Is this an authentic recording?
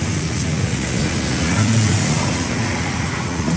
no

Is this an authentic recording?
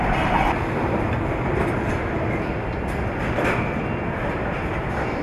yes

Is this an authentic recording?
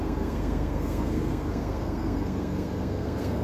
no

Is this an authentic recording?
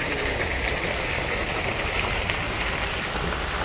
yes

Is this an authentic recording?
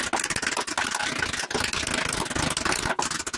yes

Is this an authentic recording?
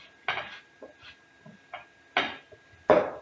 yes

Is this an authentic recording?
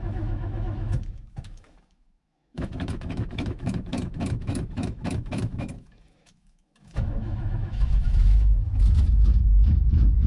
no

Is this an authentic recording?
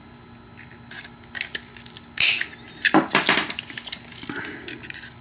yes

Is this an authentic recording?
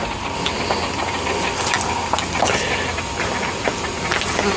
yes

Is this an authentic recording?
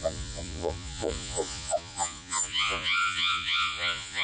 no